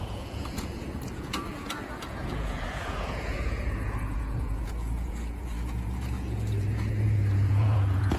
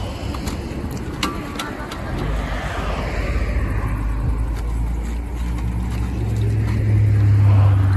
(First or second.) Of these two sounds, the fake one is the first